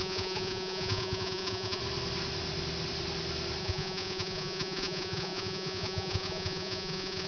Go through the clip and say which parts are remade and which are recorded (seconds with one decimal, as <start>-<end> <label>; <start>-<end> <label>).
0.0-1.8 remade; 1.8-3.6 recorded; 3.6-7.3 remade